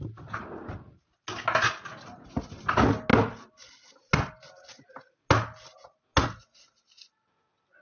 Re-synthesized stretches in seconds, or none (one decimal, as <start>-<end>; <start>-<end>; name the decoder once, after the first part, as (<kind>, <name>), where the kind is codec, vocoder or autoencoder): none